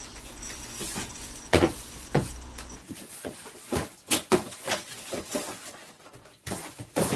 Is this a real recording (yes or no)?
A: no